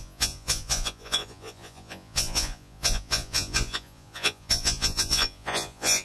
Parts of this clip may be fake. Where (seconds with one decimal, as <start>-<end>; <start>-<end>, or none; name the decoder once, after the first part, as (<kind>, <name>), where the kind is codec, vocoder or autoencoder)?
0.0-6.0 (vocoder, Vocos)